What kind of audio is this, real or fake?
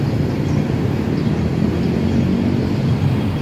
real